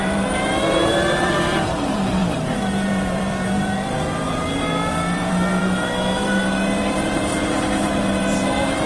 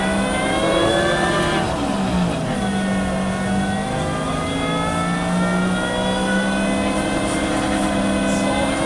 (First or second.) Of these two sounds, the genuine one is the second